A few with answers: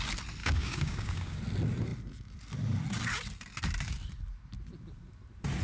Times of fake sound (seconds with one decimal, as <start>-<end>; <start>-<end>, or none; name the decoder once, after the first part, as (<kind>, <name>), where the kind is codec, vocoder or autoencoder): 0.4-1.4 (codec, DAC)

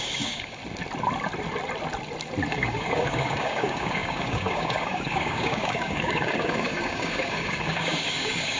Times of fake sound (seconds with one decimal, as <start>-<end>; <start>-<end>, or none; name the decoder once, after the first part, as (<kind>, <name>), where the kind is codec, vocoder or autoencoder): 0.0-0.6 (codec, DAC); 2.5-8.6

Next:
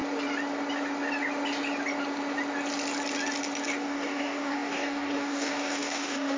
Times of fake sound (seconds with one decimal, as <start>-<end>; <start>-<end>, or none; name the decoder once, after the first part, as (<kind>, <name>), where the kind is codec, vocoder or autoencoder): 3.8-6.4 (codec, DAC)

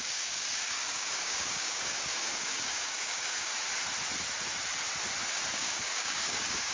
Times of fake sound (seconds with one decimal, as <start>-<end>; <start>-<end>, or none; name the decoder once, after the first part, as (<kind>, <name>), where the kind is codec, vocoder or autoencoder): 0.0-3.5 (codec, DAC); 5.5-6.7

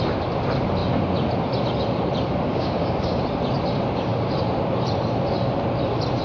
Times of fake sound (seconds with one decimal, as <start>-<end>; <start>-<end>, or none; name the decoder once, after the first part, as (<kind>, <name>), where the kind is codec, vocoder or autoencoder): 2.5-3.2 (codec, DAC)

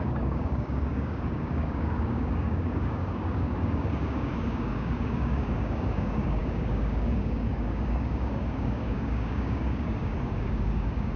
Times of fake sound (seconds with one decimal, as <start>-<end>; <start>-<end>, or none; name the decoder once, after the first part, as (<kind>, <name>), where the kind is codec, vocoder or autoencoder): 0.0-11.2 (codec, DAC)

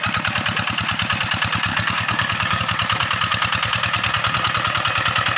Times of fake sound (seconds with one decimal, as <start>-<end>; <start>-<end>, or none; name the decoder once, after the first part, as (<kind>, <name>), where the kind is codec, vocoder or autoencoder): 1.7-2.6 (codec, DAC)